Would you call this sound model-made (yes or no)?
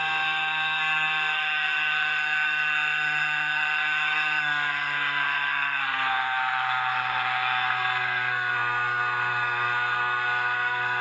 yes